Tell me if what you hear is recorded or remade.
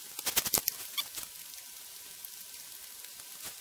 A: recorded